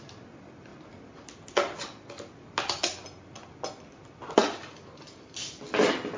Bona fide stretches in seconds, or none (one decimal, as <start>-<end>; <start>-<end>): 0.0-6.2